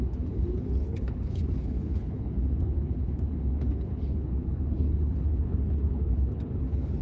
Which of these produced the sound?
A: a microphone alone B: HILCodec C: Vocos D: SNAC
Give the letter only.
B